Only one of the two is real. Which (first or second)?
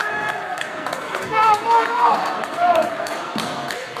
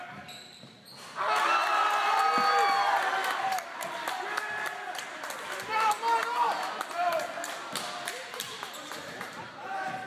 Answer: second